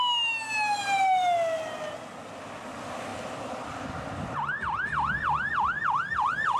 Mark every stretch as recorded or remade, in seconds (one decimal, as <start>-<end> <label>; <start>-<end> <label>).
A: 0.0-3.1 recorded; 3.1-3.7 remade; 3.7-6.6 recorded